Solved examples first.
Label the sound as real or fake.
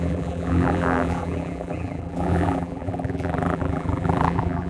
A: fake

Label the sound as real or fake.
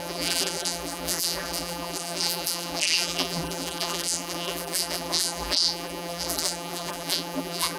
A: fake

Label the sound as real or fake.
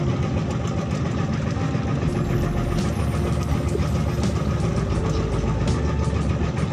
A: real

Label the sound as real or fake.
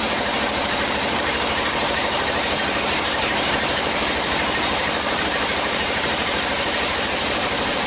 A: fake